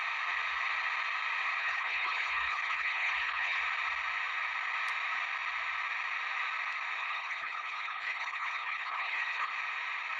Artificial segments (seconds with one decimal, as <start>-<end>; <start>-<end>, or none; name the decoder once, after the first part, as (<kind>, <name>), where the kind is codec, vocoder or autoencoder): 1.6-3.6 (codec, HILCodec); 7.0-9.5